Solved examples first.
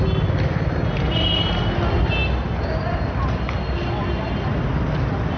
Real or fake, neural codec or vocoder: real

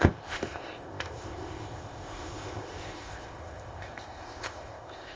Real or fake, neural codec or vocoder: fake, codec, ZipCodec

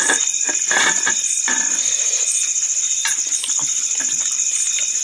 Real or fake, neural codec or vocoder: real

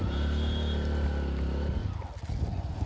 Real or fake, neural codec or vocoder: real